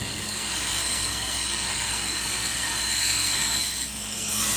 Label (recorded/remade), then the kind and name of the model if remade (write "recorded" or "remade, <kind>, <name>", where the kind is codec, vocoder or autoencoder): remade, codec, SNAC